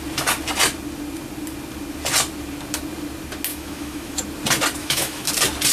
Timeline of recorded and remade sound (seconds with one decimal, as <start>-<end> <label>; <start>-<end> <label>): 0.0-3.5 recorded; 3.5-4.2 remade; 4.2-4.8 recorded; 4.8-5.3 remade; 5.3-5.7 recorded